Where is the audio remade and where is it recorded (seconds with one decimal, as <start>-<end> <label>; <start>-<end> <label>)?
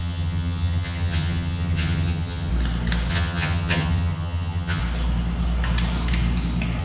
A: 0.0-2.5 remade; 2.5-3.1 recorded; 3.1-4.8 remade; 4.8-6.8 recorded